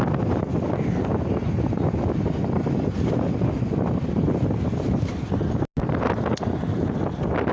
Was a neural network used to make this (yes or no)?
no